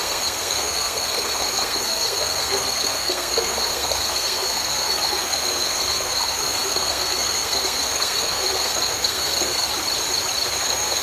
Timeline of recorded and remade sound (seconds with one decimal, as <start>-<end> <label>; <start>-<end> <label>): 0.0-9.7 remade; 9.7-10.5 recorded; 10.5-11.0 remade